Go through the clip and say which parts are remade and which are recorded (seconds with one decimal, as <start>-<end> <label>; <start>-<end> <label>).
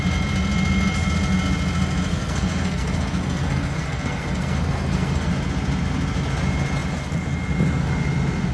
0.0-2.1 recorded; 2.1-5.3 remade; 5.3-8.5 recorded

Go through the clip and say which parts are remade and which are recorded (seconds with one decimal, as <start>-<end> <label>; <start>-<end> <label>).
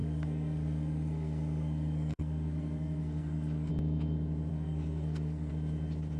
0.0-3.7 remade; 3.7-4.5 recorded; 4.5-5.5 remade; 5.5-6.2 recorded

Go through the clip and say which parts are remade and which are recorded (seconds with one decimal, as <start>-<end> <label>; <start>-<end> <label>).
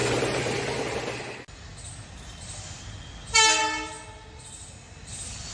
0.0-5.5 recorded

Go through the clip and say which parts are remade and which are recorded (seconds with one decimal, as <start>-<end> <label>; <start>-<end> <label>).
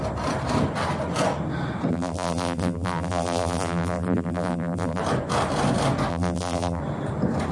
0.0-1.9 recorded; 1.9-5.0 remade; 5.0-6.1 recorded; 6.1-6.8 remade; 6.8-7.5 recorded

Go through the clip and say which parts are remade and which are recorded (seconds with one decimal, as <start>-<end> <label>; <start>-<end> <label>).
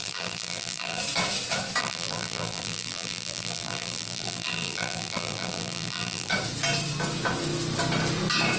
0.0-1.0 remade; 1.0-1.8 recorded; 1.8-6.3 remade; 6.3-8.6 recorded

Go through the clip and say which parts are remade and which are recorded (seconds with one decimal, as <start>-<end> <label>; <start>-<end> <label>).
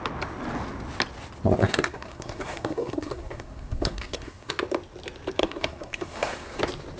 0.0-1.6 recorded; 1.6-4.5 remade; 4.5-5.4 recorded; 5.4-6.6 remade; 6.6-7.0 recorded